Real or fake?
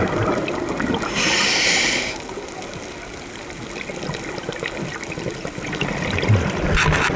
real